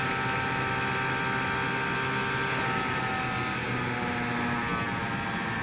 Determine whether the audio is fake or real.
real